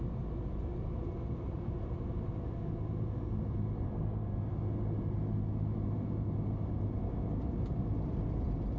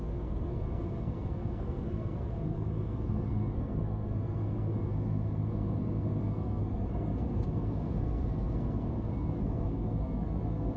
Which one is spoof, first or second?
second